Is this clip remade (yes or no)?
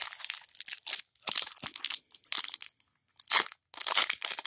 no